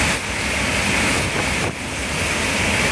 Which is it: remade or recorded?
recorded